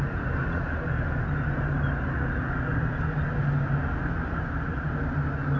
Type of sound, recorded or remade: recorded